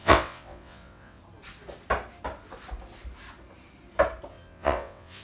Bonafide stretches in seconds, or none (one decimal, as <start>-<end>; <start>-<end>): 1.2-4.3